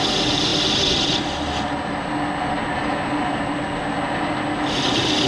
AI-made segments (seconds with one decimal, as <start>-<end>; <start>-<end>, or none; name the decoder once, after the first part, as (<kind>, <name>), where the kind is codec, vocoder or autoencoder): none